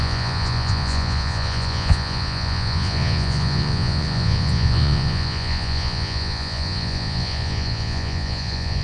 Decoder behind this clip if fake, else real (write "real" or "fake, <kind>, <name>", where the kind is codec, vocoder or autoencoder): fake, vocoder, Vocos